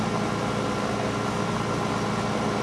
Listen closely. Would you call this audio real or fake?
real